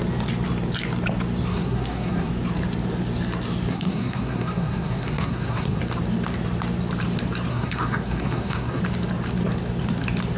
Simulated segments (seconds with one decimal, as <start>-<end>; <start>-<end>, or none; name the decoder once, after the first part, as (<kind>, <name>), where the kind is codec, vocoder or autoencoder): 1.5-2.3 (codec, SNAC); 3.7-5.8; 7.5-8.8